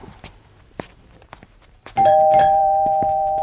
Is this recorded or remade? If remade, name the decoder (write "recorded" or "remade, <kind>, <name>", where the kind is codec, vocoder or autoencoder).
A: remade, vocoder, BigVGAN v2